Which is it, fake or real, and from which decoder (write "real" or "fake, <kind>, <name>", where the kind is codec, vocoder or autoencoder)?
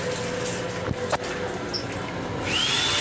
real